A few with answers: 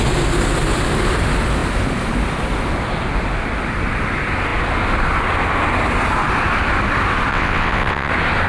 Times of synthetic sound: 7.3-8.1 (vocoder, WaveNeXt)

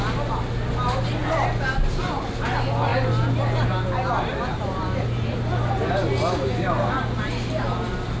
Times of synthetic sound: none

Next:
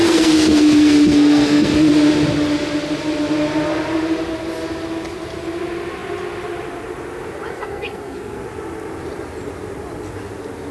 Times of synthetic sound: 0.0-1.9 (codec, SNAC); 7.5-8.4

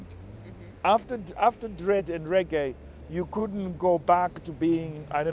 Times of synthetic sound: none